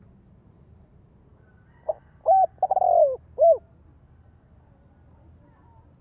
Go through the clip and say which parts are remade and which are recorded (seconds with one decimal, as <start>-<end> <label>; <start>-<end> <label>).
0.0-6.0 recorded